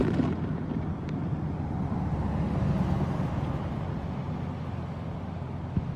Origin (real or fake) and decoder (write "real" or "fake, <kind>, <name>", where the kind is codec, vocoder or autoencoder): real